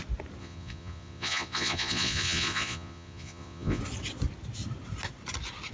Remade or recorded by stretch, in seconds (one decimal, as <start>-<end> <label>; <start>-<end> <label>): 0.0-0.4 recorded; 0.4-3.8 remade; 3.8-5.7 recorded